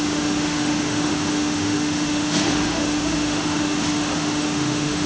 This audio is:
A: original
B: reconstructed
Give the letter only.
B